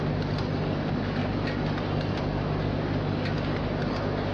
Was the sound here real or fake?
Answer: real